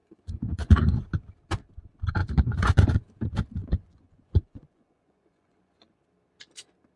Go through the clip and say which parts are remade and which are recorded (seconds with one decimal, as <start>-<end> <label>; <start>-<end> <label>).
0.0-1.1 remade; 1.1-2.2 recorded; 2.2-3.0 remade; 3.0-3.6 recorded; 3.6-6.0 remade; 6.0-7.0 recorded